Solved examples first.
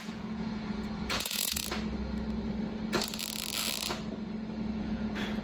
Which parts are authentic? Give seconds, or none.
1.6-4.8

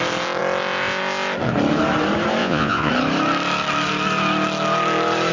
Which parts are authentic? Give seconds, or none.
0.0-2.4; 2.9-5.3

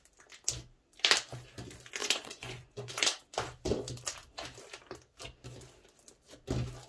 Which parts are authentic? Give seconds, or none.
0.0-2.0; 3.0-6.9

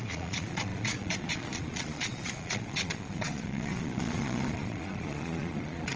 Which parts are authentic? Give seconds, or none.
none

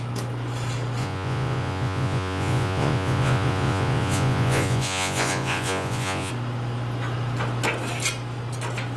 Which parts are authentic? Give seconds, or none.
0.0-1.0; 6.3-9.0

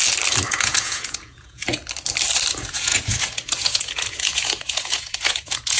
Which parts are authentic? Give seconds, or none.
0.0-0.5; 1.8-2.5

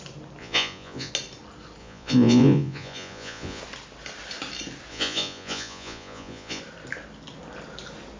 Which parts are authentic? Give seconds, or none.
0.0-0.4; 1.1-1.8; 3.6-4.9; 6.6-8.2